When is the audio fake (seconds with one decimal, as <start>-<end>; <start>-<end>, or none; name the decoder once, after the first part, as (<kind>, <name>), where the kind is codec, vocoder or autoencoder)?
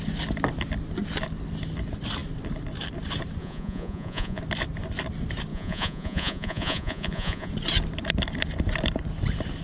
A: 3.4-4.4 (vocoder, Vocos); 5.5-7.5